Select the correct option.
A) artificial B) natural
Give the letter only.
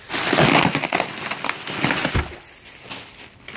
B